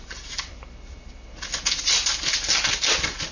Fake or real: real